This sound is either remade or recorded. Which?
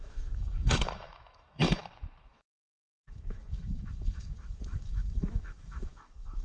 remade